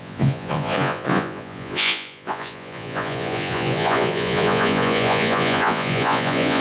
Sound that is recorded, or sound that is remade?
remade